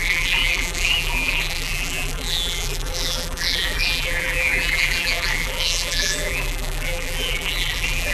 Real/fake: fake